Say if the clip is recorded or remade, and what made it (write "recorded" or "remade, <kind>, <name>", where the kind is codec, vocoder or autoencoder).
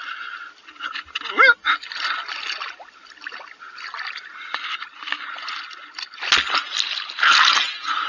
recorded